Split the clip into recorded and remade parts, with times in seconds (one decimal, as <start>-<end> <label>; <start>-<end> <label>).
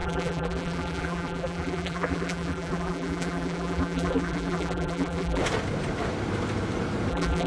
0.0-5.4 remade; 5.4-7.1 recorded; 7.1-7.5 remade